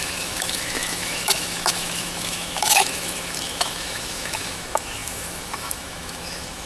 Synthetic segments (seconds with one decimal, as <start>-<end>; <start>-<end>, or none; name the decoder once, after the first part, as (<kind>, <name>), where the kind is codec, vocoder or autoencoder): 0.0-6.7 (autoencoder, DAC-VAE)